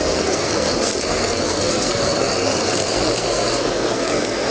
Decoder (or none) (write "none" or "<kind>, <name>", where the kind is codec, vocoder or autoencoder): codec, SNAC